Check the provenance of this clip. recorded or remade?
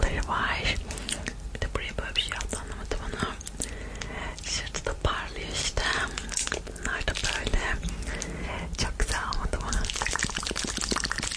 recorded